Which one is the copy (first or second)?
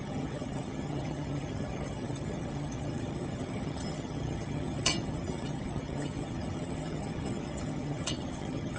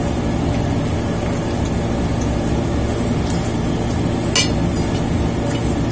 first